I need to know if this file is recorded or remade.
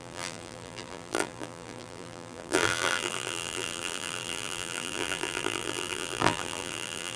remade